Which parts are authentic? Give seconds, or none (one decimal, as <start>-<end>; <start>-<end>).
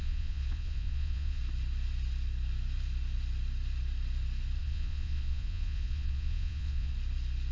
1.4-4.6; 6.9-7.5